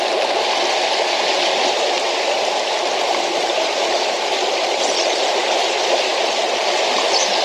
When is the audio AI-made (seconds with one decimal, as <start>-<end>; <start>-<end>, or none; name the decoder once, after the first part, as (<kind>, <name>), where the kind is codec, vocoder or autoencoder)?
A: 3.7-4.4 (vocoder, BigVGAN v2)

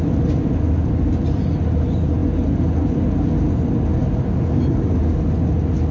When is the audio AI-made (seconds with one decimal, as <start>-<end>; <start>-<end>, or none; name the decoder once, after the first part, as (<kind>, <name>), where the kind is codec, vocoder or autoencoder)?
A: none

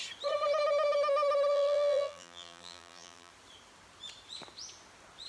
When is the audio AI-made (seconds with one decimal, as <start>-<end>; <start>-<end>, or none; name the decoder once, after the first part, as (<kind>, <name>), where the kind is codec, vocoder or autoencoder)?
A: 1.5-3.3 (vocoder, BigVGAN v2)

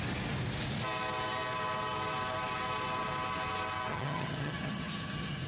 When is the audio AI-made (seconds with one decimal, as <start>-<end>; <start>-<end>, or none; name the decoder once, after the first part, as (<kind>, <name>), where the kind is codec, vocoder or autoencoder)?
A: 3.9-5.5 (vocoder, HiFi-GAN)

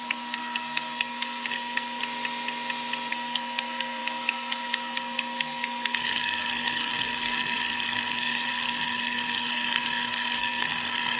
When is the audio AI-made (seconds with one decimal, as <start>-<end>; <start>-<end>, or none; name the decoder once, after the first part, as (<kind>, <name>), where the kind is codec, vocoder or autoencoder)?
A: 0.0-2.0 (codec, SNAC); 3.1-11.2

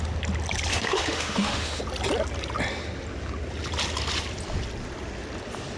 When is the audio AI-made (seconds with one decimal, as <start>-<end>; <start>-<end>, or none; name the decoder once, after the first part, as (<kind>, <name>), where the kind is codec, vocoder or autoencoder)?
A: 0.7-1.8 (autoencoder, DAC-VAE)